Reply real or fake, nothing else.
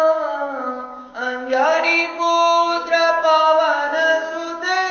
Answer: fake